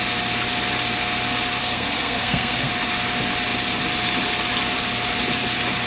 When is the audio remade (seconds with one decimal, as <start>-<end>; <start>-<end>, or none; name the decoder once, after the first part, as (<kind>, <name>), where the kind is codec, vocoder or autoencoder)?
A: 1.6-2.7 (codec, SNAC)